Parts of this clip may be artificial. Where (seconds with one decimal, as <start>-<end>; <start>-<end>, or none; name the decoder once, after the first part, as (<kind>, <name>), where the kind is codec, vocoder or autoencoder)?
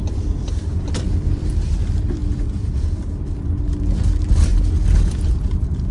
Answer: 0.0-1.5 (vocoder, BigVGAN v2)